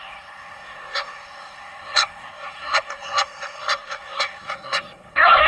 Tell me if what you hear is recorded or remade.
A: remade